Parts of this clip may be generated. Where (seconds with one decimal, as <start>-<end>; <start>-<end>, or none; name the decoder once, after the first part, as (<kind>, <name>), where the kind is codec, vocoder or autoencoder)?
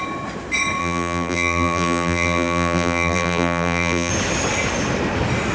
0.8-4.1 (vocoder, BigVGAN v2)